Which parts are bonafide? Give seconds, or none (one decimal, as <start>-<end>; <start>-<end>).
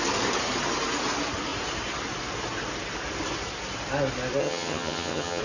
0.0-4.4